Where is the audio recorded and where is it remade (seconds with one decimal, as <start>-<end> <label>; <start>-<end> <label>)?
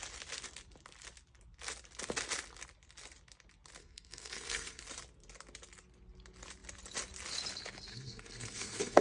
0.0-3.8 recorded; 3.8-4.8 remade; 4.8-7.9 recorded; 7.9-9.0 remade